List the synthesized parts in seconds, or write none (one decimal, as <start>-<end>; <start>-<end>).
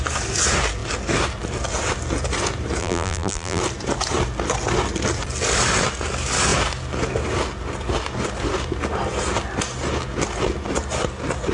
2.8-3.6